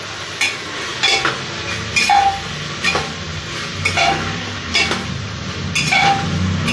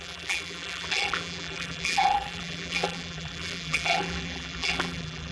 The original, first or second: first